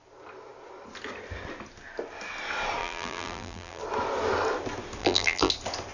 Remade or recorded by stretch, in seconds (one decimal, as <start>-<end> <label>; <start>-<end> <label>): 0.0-2.8 recorded; 2.8-3.8 remade; 3.8-5.0 recorded; 5.0-5.5 remade; 5.5-5.9 recorded